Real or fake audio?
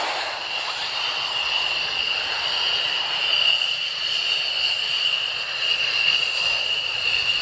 real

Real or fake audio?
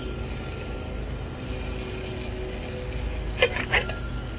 real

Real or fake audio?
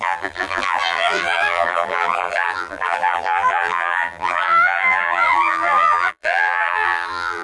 fake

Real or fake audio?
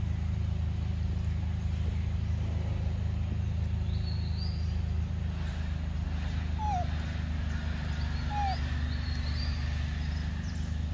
real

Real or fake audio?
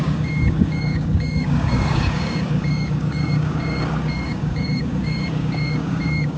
fake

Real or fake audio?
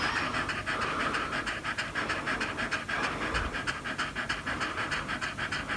real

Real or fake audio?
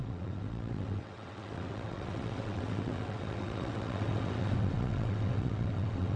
fake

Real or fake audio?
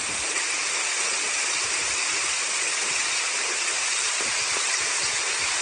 real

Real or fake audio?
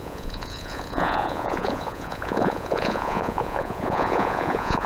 fake